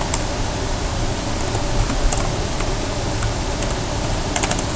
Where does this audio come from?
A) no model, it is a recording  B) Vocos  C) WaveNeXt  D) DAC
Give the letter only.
A